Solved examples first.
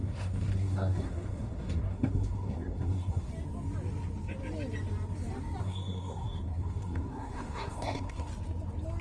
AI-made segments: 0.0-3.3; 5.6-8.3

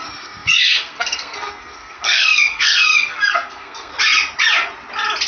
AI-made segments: 0.0-3.9